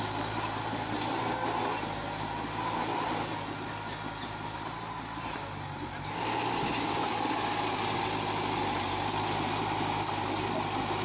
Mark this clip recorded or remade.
recorded